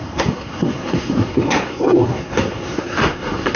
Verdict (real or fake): fake